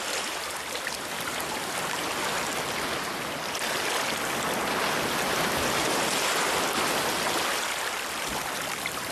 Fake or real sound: real